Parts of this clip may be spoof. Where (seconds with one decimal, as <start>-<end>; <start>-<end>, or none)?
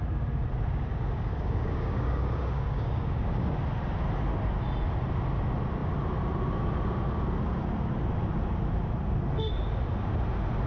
0.9-3.6